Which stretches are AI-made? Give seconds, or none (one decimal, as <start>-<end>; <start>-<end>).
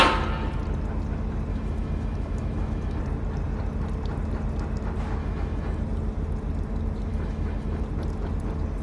1.5-3.0; 5.2-5.8; 7.1-7.8